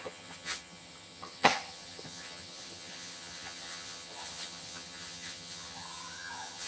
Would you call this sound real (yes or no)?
no